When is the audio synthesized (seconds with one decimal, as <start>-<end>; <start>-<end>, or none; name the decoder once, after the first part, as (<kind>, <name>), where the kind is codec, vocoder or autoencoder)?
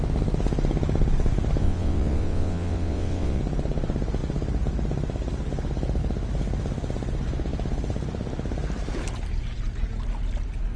1.6-3.4 (vocoder, WaveNeXt)